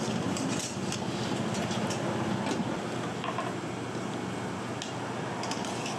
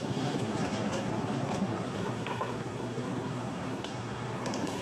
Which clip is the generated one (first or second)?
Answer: second